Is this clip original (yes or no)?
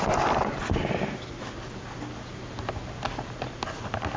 yes